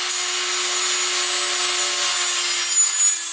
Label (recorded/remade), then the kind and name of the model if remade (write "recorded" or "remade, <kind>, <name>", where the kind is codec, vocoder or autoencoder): recorded